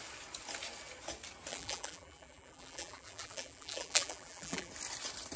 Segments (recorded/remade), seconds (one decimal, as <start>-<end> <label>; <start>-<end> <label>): 0.0-1.5 recorded; 1.5-4.7 remade; 4.7-5.4 recorded